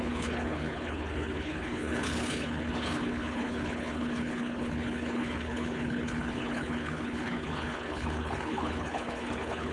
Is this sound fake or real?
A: fake